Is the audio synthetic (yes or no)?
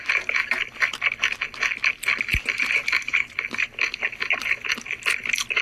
no